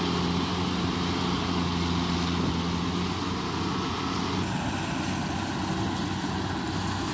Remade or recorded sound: recorded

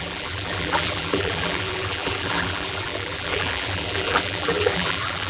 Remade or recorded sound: remade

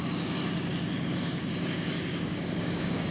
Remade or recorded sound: remade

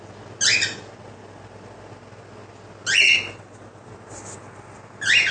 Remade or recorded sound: recorded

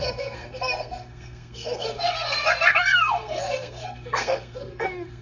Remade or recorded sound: remade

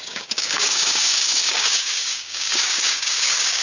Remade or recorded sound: remade